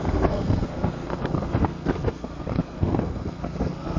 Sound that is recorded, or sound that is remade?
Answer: remade